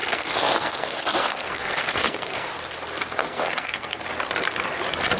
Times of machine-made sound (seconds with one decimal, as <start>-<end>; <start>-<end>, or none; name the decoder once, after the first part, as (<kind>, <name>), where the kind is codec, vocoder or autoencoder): 0.0-2.5 (codec, SNAC); 3.2-4.0